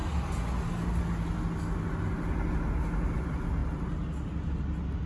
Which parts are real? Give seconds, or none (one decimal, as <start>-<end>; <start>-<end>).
0.0-5.1